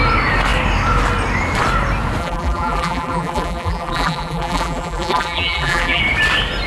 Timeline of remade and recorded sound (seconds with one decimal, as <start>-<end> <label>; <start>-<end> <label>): 0.0-2.2 recorded; 2.2-6.0 remade; 6.0-6.7 recorded

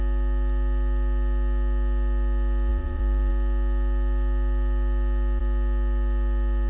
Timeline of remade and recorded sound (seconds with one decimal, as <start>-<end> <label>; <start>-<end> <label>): 0.0-2.7 recorded; 2.7-3.3 remade; 3.3-6.7 recorded

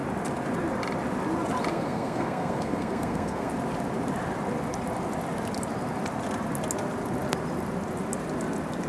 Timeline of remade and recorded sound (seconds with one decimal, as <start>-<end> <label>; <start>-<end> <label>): 0.0-1.7 recorded; 1.7-3.5 remade; 3.5-8.9 recorded

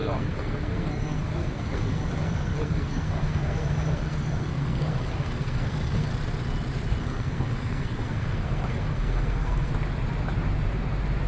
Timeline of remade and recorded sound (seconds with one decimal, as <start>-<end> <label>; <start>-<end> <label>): 0.0-6.1 remade; 6.1-7.0 recorded; 7.0-9.7 remade; 9.7-11.3 recorded

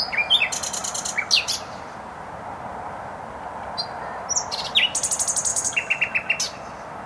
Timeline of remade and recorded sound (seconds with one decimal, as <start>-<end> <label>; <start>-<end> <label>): 0.0-5.5 recorded; 5.5-6.0 remade; 6.0-7.1 recorded

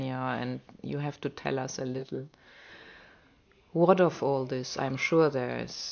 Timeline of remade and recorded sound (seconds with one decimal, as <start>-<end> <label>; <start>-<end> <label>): 0.0-2.0 recorded; 2.0-2.7 remade; 2.7-5.9 recorded

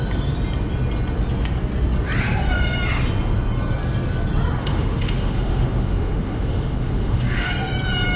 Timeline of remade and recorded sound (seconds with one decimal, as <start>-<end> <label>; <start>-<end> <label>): 0.0-4.6 recorded; 4.6-7.5 remade; 7.5-8.2 recorded